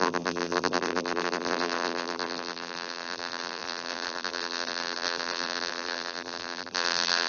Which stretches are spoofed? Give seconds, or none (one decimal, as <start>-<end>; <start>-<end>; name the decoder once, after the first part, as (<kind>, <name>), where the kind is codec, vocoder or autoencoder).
0.0-7.3 (vocoder, BigVGAN v2)